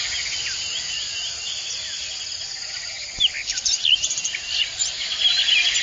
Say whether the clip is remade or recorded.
recorded